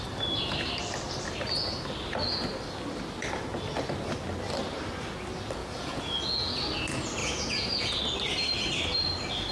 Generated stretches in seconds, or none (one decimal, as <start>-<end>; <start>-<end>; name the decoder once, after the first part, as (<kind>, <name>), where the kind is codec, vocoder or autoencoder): 5.6-6.6 (vocoder, Vocos); 7.2-8.0